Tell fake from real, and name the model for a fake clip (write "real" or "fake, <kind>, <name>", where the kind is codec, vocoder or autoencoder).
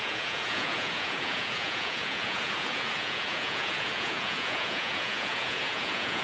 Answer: fake, vocoder, Vocos